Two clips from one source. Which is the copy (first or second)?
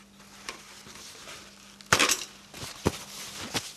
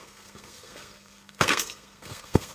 second